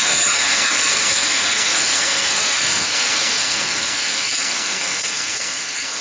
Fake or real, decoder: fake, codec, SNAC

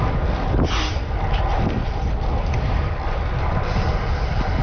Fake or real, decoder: real